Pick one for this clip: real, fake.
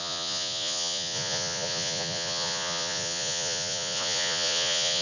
fake